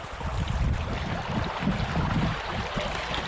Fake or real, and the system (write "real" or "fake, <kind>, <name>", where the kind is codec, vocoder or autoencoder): real